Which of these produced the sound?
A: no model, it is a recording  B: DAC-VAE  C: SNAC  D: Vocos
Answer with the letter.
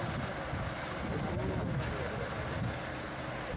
A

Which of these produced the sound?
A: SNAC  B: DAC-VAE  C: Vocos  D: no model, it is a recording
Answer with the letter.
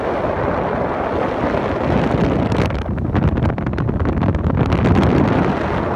D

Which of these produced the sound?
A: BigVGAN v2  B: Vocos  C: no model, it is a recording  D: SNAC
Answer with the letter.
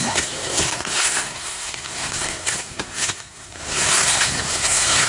D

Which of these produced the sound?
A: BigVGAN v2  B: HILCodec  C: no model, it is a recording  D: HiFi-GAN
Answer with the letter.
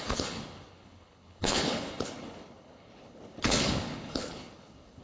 B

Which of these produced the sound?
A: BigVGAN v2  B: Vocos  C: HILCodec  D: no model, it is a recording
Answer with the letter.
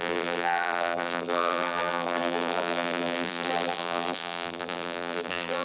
A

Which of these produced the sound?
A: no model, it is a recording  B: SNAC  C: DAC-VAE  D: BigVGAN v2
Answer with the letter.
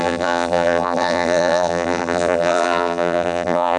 D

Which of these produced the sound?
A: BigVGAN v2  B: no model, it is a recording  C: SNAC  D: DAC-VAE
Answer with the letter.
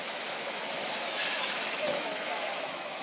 D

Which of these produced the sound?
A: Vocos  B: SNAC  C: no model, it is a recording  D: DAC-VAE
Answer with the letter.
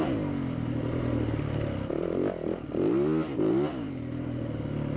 C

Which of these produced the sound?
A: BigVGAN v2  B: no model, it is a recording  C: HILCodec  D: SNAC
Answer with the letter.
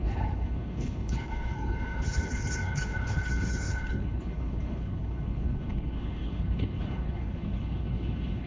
C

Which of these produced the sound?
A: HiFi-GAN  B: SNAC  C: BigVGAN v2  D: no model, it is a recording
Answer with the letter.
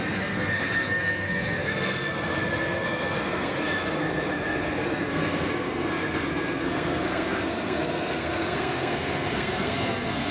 B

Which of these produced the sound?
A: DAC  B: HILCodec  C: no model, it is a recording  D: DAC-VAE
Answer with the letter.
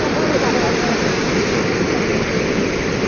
C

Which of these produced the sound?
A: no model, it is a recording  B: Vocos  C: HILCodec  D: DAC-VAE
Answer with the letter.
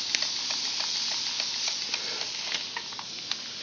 A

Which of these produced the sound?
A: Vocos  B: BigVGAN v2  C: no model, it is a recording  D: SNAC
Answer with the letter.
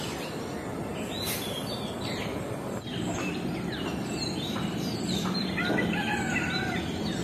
B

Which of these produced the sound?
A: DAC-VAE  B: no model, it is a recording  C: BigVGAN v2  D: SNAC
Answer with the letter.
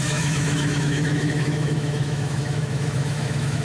A